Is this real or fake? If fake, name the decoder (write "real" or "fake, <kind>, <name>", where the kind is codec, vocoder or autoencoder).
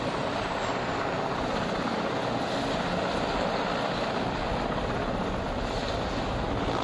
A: real